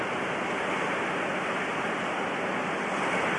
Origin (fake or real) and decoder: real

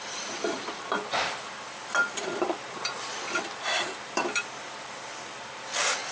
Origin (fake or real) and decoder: fake, vocoder, BigVGAN v2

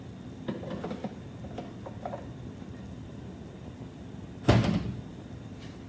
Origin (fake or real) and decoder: real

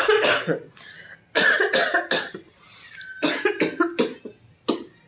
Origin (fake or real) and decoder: real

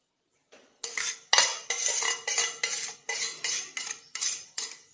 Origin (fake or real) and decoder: real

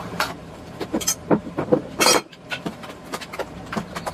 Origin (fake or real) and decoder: fake, vocoder, BigVGAN v2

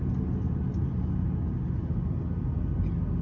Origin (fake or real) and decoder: real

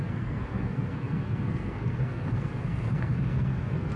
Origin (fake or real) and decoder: fake, codec, SNAC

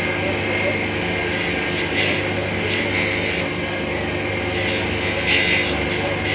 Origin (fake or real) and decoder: real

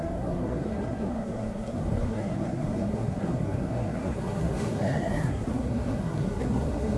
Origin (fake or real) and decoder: fake, codec, SNAC